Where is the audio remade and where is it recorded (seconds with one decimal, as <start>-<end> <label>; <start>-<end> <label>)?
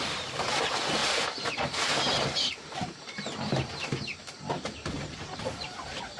0.0-6.2 remade